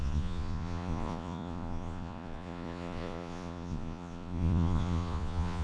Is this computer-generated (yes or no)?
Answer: yes